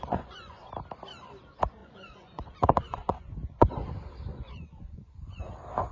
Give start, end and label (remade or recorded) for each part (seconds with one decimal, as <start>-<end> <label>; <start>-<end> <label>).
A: 0.0-0.6 remade; 0.6-1.8 recorded; 1.8-3.7 remade; 3.7-4.3 recorded; 4.3-5.4 remade; 5.4-5.9 recorded